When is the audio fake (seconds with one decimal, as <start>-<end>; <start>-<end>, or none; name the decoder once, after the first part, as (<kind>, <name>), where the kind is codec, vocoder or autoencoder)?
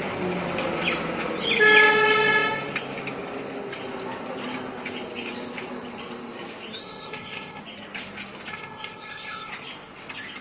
6.8-7.6 (codec, ZipCodec); 8.5-9.5